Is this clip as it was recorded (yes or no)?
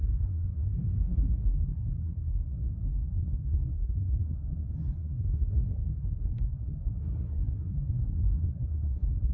no